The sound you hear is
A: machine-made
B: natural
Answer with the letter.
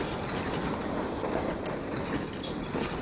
A